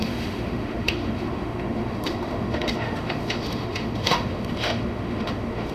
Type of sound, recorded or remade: remade